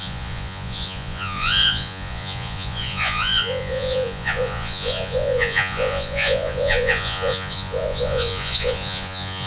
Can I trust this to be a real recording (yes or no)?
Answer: no